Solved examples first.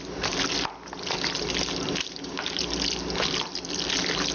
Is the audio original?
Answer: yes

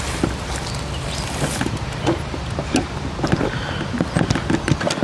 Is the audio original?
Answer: yes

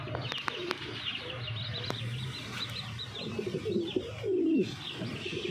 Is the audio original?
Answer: yes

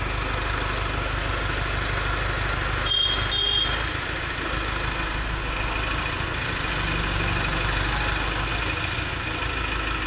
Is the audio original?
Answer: yes